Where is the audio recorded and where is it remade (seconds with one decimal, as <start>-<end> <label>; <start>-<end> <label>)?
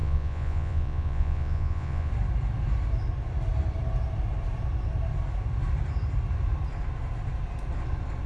0.0-2.1 remade; 2.1-8.3 recorded